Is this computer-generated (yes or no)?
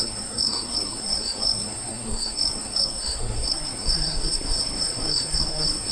yes